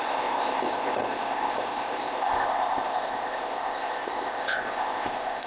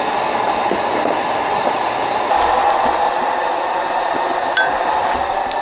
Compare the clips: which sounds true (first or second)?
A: second